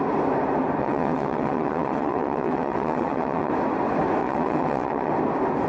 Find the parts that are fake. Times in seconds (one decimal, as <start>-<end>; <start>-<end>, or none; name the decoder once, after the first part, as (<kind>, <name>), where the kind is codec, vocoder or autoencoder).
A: 0.8-3.5 (vocoder, WaveNeXt); 4.2-5.1